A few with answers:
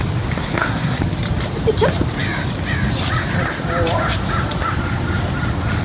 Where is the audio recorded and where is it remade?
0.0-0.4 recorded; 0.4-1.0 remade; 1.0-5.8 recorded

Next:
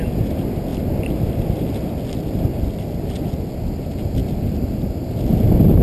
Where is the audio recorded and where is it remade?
0.0-5.8 recorded

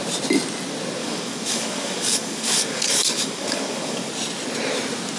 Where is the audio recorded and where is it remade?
0.0-1.0 recorded; 1.0-4.1 remade; 4.1-5.2 recorded

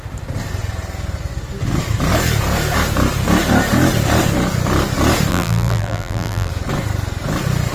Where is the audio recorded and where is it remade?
0.0-5.3 recorded; 5.3-6.5 remade; 6.5-7.7 recorded

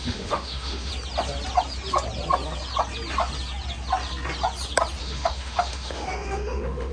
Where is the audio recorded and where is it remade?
0.0-0.9 remade; 0.9-5.0 recorded; 5.0-6.9 remade

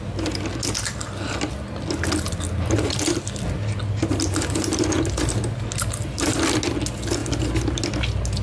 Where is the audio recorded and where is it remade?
0.0-8.4 recorded

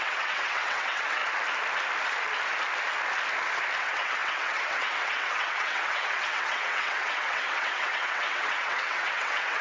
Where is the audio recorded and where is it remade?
0.0-1.2 remade; 1.2-3.8 recorded; 3.8-9.6 remade

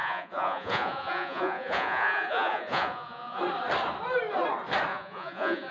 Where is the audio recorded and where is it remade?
0.0-3.4 remade; 3.4-4.9 recorded; 4.9-5.7 remade